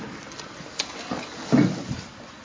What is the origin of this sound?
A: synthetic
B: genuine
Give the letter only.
B